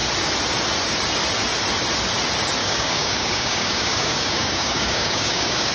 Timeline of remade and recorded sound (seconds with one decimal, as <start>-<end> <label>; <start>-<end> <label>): 0.0-2.6 recorded; 2.6-5.7 remade